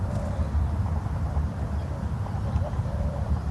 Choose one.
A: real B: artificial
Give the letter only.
A